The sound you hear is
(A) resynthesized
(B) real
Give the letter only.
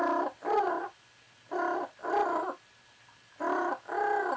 B